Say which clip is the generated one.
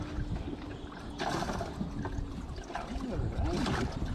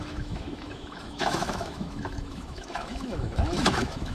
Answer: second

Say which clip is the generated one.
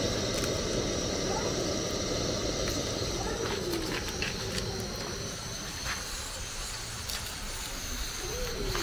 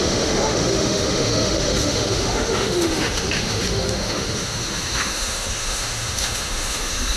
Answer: second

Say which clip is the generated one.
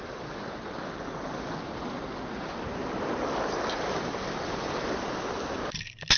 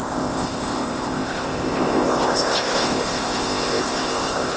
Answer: second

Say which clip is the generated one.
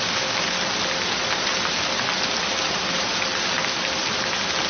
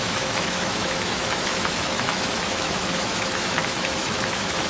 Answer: second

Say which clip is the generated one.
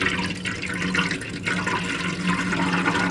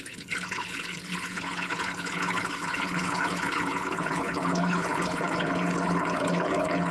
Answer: second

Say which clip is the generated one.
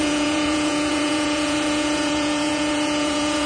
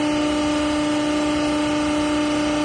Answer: first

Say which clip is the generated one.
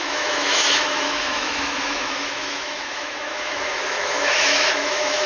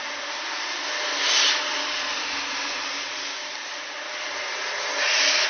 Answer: first